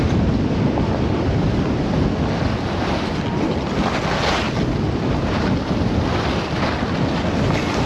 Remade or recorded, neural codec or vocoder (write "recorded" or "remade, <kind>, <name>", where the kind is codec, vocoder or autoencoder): recorded